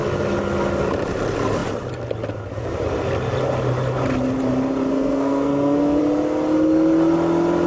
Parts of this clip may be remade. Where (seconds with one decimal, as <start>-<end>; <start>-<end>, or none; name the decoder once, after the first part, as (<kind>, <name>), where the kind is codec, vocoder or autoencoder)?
4.9-6.0 (codec, SNAC)